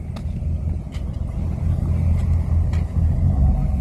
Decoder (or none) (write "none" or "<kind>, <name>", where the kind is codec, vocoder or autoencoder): none